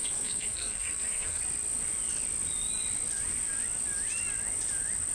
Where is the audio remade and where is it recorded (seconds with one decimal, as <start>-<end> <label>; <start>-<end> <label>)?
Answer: 0.0-1.4 remade; 1.4-5.1 recorded